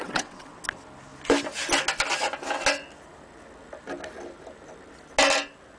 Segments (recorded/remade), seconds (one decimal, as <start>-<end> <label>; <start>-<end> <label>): 0.0-0.6 remade; 0.6-5.8 recorded

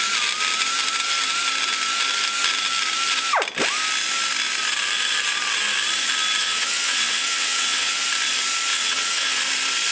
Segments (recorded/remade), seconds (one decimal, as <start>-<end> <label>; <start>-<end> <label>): 0.0-6.4 recorded; 6.4-8.0 remade; 8.0-8.7 recorded; 8.7-9.4 remade; 9.4-9.9 recorded

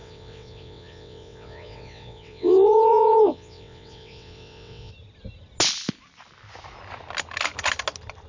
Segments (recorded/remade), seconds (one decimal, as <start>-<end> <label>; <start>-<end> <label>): 0.0-4.9 remade; 4.9-8.3 recorded

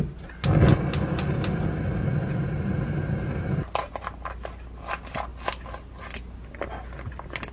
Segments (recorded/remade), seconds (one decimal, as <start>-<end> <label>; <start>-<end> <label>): 0.0-7.5 recorded